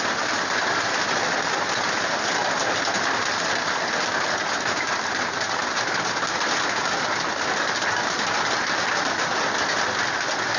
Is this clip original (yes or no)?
yes